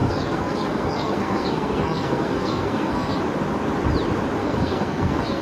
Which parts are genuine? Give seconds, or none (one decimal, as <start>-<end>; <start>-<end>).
3.2-4.4

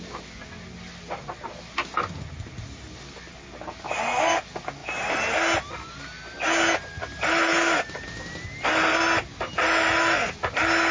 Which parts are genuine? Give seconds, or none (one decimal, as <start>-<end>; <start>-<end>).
0.0-10.9

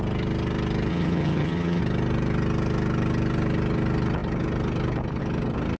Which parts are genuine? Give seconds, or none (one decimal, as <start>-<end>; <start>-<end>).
0.0-0.9; 1.8-5.8